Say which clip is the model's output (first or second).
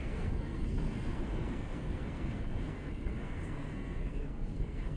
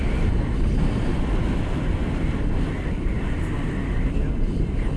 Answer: first